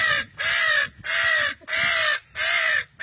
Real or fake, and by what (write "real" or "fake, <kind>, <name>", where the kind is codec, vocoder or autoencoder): real